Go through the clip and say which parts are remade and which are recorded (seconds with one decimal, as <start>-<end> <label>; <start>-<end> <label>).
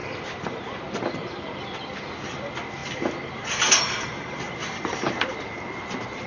0.0-6.3 recorded